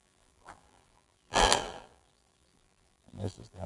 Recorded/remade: remade